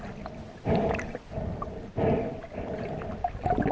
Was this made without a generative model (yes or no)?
yes